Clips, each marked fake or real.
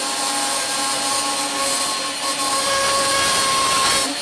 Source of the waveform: real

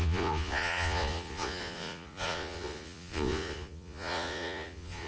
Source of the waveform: fake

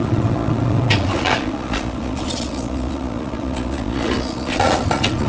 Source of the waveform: fake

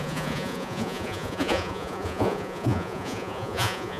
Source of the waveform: fake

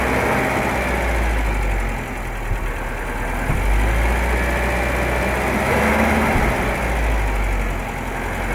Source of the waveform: real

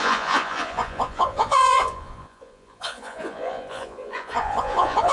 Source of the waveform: fake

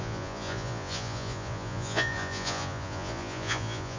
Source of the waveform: fake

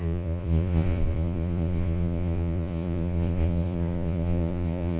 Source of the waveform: fake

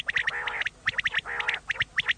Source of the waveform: real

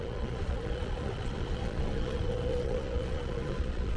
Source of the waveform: fake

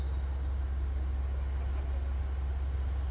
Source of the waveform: real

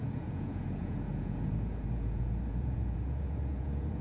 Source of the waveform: fake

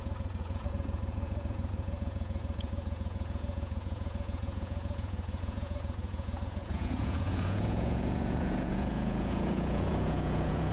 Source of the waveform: fake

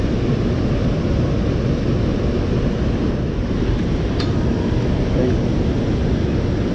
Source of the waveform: real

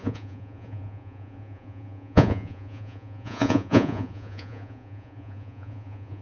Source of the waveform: fake